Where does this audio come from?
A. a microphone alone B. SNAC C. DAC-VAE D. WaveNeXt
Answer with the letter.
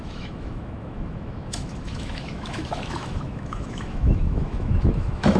C